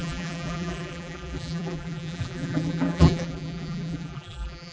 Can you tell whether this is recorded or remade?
remade